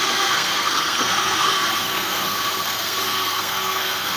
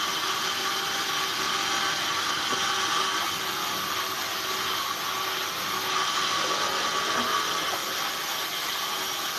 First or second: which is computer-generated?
first